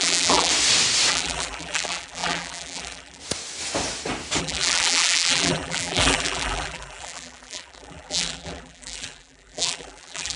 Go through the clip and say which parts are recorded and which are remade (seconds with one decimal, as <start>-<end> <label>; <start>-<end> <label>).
0.0-0.5 remade; 0.5-1.1 recorded; 1.1-3.2 remade; 3.2-4.4 recorded; 4.4-10.4 remade